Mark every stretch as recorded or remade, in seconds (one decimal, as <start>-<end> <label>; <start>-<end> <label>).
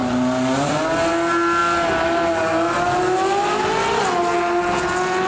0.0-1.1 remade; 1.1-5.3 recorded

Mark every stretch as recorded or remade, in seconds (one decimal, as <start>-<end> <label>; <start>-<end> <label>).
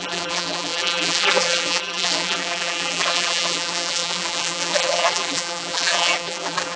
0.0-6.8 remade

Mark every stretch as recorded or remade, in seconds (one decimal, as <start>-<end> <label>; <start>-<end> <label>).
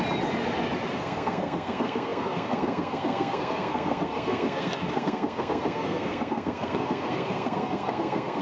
0.0-0.9 recorded; 0.9-8.4 remade